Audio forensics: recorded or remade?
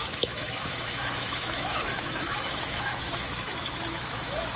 remade